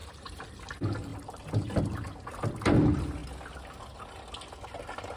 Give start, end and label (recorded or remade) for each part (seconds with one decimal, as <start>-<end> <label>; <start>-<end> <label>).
0.0-0.5 remade; 0.5-1.1 recorded; 1.1-1.8 remade; 1.8-5.2 recorded